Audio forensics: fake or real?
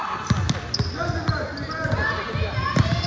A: real